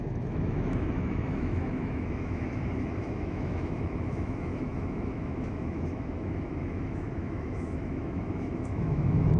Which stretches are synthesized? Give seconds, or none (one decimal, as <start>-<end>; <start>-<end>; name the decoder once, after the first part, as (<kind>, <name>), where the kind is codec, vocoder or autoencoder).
0.0-9.4 (autoencoder, DAC-VAE)